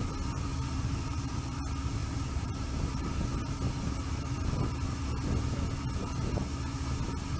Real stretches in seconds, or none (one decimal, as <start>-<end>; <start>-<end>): 0.0-0.5; 1.6-2.0; 3.1-7.4